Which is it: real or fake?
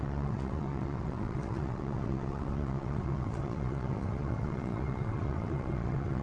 fake